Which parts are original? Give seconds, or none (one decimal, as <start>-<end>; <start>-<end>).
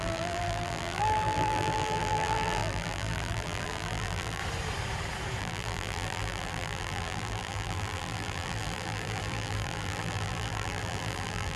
4.4-5.4